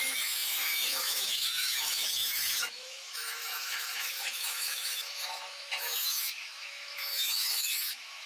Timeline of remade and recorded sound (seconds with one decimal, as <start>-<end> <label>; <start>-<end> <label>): 0.0-8.3 remade